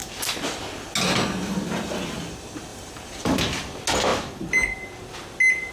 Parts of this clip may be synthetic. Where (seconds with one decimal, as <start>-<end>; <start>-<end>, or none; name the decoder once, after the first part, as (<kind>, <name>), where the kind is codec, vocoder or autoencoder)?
2.7-3.4 (vocoder, BigVGAN v2)